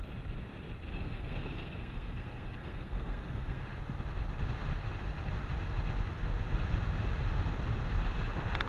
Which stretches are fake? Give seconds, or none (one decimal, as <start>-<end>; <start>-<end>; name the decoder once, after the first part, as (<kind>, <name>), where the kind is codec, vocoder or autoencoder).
0.9-3.6 (codec, SNAC)

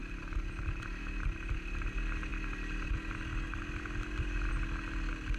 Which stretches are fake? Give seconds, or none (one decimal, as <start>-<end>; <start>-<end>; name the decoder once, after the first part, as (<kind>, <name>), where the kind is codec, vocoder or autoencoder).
none

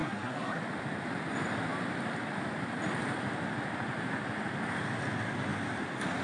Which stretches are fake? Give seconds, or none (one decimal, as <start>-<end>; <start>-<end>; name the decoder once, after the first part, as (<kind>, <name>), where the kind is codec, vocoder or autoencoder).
0.0-0.6 (codec, SNAC)

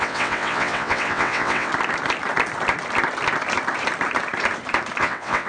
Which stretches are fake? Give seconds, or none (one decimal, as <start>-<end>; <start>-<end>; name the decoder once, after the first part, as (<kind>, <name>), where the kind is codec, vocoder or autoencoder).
0.0-1.7 (vocoder, WaveNeXt); 5.0-5.5

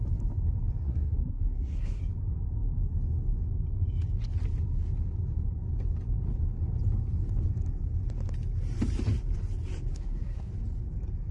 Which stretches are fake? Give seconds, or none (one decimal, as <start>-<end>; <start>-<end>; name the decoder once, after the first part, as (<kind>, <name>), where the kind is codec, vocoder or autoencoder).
0.8-2.0 (codec, SNAC); 9.9-10.5

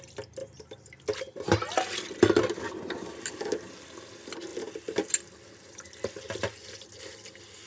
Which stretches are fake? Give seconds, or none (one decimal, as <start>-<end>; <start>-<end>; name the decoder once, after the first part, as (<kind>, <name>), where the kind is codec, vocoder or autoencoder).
none